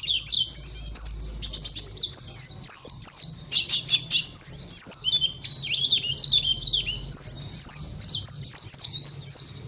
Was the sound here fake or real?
real